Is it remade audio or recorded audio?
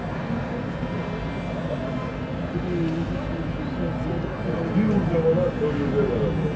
recorded